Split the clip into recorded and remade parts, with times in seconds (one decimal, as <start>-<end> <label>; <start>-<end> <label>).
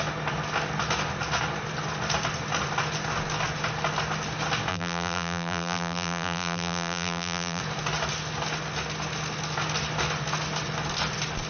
0.0-4.7 recorded; 4.7-7.6 remade; 7.6-11.5 recorded